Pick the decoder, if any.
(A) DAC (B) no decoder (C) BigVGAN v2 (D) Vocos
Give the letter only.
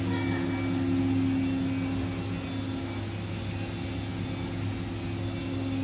B